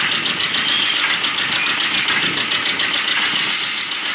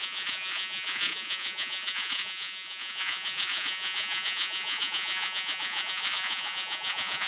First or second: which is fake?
second